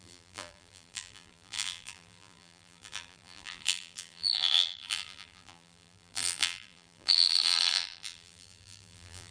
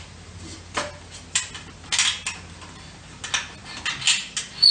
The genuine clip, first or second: second